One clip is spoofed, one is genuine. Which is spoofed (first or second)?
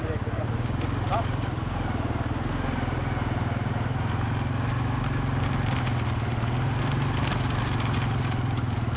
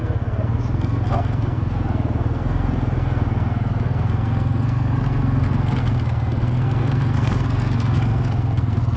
second